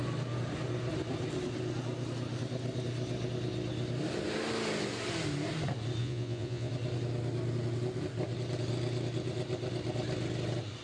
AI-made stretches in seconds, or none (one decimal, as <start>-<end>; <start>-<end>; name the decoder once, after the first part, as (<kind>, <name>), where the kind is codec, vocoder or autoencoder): 6.0-6.7 (vocoder, Vocos)